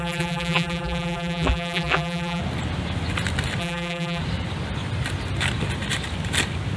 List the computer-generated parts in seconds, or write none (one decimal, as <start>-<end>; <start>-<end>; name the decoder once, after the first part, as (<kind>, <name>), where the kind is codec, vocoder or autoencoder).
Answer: 0.0-2.4 (vocoder, BigVGAN v2); 3.6-4.2